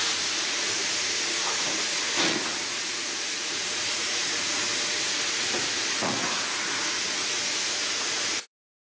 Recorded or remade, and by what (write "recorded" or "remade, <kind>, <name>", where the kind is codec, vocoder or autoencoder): remade, vocoder, Vocos